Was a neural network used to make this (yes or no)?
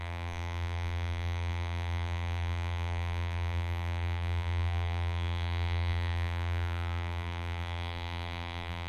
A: yes